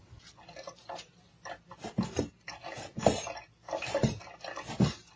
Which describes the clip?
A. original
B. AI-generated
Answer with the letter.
A